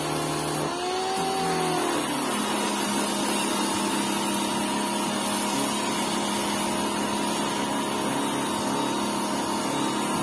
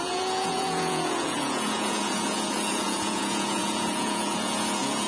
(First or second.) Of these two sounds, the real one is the first